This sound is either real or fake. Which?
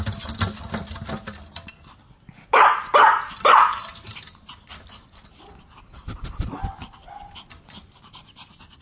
real